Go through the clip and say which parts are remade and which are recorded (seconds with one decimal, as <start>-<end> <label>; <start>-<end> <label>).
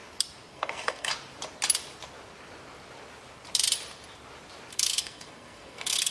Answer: 0.0-0.5 recorded; 0.5-1.1 remade; 1.1-4.7 recorded; 4.7-6.1 remade